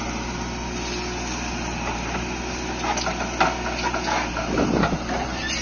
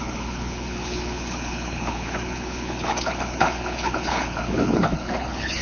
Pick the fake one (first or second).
second